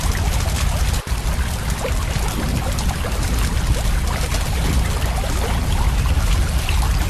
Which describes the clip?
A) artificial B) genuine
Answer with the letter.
B